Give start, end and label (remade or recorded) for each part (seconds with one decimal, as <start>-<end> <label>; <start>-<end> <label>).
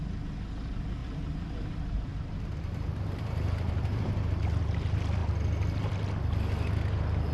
0.0-1.0 recorded; 1.0-4.6 remade; 4.6-7.3 recorded